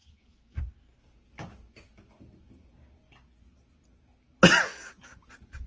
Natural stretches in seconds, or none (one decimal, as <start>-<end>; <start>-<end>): 0.6-4.7; 5.3-5.7